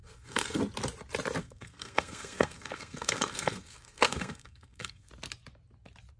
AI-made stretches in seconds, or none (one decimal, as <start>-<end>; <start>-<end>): 0.0-0.6; 1.4-5.1